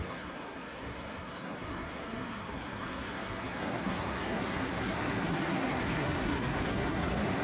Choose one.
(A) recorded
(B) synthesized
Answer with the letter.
B